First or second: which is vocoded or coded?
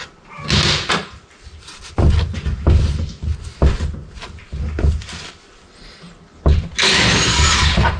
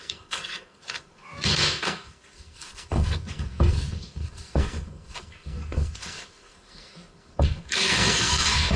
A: second